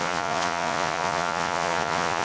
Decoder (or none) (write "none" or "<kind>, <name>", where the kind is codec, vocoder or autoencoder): vocoder, Vocos